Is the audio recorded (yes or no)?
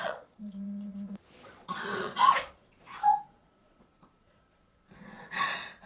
no